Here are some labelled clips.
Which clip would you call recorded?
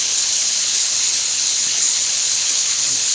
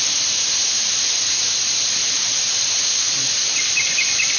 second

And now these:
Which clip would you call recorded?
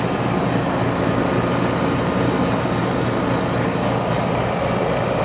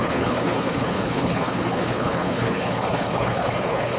first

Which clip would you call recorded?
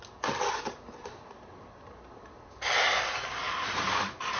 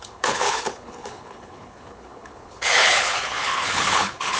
first